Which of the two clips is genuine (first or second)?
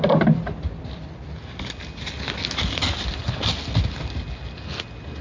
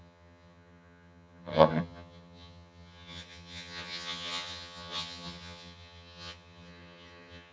first